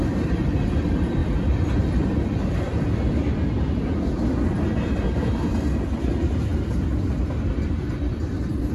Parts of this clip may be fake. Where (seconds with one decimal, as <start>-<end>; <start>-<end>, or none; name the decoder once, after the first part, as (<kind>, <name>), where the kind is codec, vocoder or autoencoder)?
none